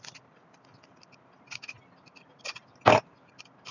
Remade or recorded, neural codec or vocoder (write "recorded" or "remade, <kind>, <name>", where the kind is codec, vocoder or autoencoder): recorded